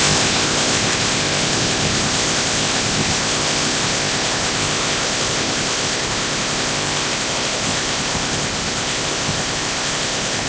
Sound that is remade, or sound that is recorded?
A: remade